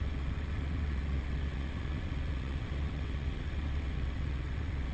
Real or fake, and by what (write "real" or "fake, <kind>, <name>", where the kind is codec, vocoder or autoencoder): fake, vocoder, WaveNeXt